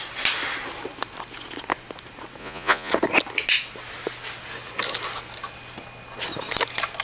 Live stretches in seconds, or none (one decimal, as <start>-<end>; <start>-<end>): 0.0-2.4; 2.9-7.0